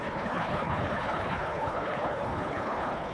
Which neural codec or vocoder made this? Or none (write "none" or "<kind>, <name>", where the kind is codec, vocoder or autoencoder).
codec, HILCodec